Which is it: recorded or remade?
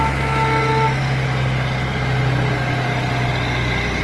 recorded